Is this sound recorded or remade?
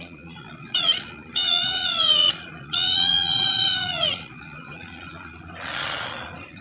remade